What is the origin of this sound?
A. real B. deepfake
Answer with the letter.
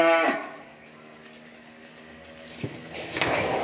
B